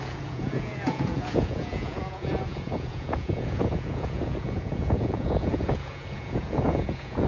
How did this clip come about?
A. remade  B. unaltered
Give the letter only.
A